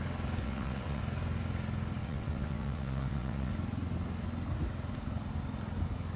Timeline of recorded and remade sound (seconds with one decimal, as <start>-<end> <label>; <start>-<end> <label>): 0.0-0.4 recorded; 0.4-1.0 remade; 1.0-2.0 recorded; 2.0-3.5 remade; 3.5-6.2 recorded